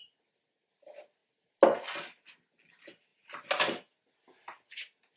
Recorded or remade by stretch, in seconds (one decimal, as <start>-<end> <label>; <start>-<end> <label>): 0.0-5.2 recorded